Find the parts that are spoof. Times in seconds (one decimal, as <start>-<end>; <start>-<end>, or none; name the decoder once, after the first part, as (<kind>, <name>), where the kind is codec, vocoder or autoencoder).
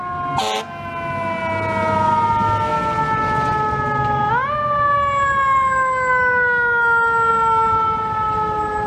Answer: none